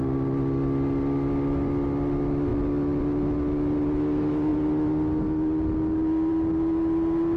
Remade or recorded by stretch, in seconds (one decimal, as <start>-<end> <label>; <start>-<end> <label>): 0.0-7.4 recorded